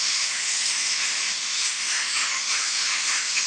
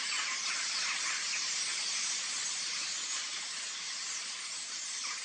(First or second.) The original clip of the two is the second